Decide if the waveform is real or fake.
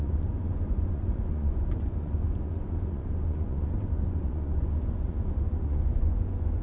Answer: fake